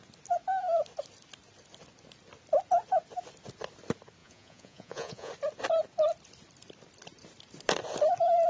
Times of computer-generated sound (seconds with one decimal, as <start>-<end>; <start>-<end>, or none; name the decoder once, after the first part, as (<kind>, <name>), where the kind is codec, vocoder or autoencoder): 4.2-5.3 (vocoder, Vocos)